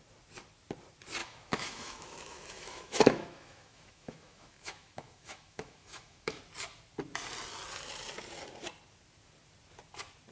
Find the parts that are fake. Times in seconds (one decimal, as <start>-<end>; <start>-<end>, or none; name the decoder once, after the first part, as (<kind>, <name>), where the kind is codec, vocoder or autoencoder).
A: 1.2-6.4 (autoencoder, DAC-VAE)